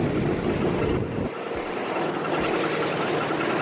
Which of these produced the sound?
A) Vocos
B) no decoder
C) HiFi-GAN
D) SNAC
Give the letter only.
B